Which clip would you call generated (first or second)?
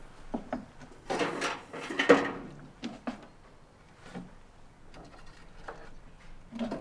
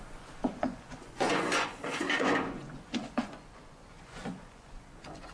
second